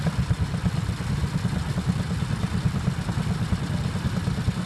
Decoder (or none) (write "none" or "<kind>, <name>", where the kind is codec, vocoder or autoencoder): none